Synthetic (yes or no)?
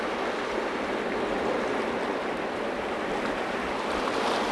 no